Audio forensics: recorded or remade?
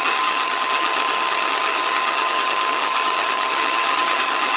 remade